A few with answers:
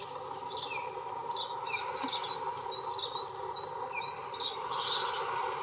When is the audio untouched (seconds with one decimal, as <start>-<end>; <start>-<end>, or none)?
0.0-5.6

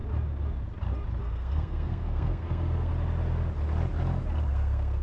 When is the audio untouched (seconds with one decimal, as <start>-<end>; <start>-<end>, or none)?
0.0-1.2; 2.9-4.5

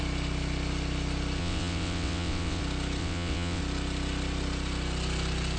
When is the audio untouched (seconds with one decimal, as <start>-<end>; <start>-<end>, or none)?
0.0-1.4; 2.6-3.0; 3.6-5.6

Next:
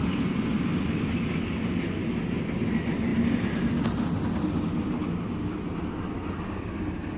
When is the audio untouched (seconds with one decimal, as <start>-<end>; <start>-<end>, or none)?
0.0-7.2

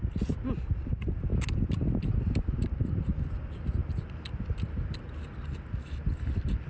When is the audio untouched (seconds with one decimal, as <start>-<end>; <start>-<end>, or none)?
0.0-6.7

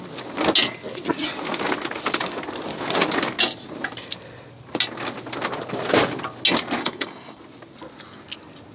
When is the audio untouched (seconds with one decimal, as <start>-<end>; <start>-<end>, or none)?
0.0-6.8; 7.4-8.7

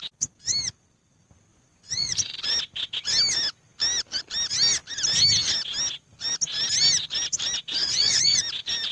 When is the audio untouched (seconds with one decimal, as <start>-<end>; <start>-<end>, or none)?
0.0-1.5; 2.5-7.8; 8.4-8.9

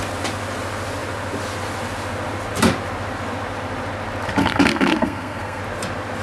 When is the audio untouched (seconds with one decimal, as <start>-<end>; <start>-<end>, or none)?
0.0-4.4; 5.6-6.2